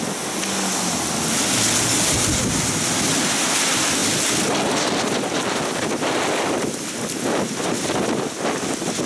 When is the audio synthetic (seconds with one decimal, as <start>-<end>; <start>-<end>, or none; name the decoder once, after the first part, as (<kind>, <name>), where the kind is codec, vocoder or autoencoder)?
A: none